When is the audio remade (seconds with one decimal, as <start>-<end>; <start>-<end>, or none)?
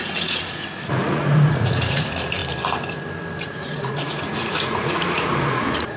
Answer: 0.0-2.4; 3.4-6.0